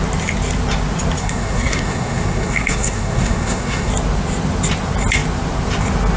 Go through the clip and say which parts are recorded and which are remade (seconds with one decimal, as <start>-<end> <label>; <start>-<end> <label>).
0.0-1.2 recorded; 1.2-3.9 remade; 3.9-6.2 recorded